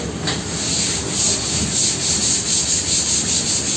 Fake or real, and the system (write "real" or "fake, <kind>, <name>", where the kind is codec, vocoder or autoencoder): real